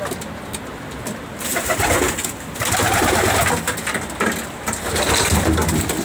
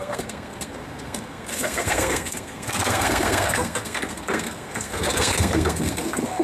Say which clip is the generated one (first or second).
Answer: second